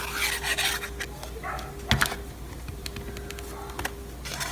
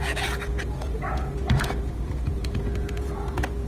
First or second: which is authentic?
first